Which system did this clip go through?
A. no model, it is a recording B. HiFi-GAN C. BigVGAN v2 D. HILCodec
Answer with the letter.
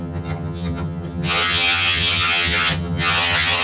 B